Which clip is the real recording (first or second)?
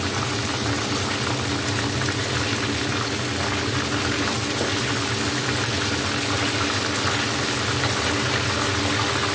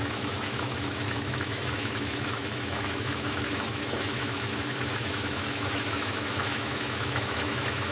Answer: first